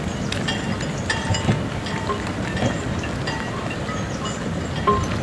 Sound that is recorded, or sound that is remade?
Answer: recorded